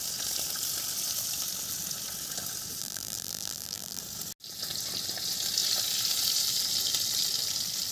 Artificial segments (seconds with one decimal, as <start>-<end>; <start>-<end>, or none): 2.8-4.0